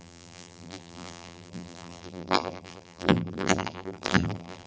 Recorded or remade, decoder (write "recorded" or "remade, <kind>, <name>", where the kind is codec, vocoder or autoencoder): remade, vocoder, BigVGAN v2